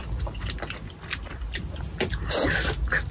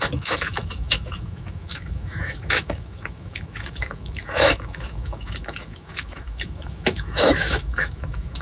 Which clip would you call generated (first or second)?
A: second